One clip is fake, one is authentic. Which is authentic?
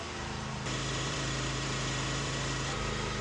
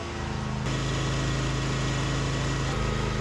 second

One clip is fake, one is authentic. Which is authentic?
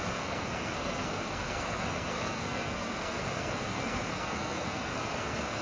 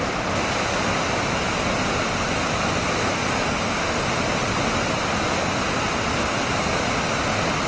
second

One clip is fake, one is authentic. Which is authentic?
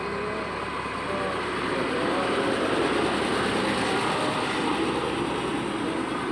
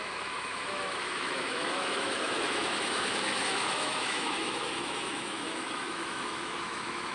first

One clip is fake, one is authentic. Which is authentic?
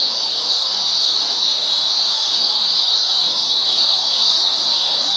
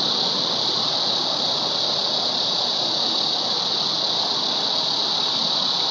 second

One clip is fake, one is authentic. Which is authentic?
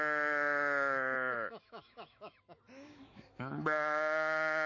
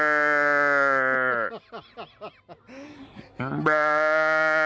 second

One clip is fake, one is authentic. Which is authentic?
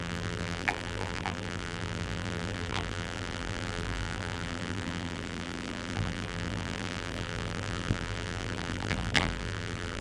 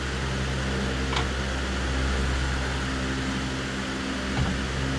second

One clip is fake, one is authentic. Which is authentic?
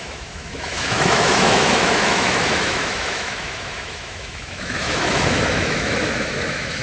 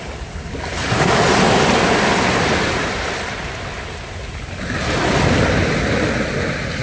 second